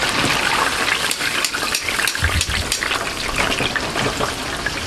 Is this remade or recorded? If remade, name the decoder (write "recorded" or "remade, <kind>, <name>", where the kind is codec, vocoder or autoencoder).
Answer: recorded